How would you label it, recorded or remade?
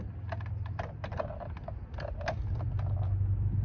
recorded